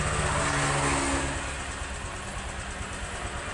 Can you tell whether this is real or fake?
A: real